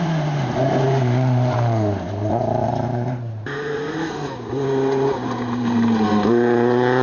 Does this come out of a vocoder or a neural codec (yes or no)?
yes